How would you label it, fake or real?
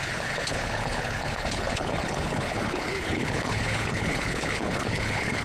fake